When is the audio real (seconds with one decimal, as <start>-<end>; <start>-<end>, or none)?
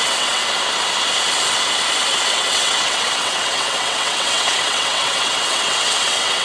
0.4-2.1